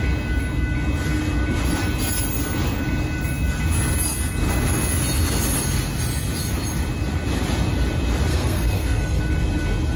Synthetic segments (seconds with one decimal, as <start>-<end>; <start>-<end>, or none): 8.3-9.2